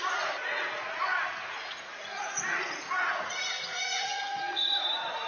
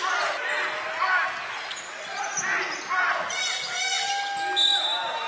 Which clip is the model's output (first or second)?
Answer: first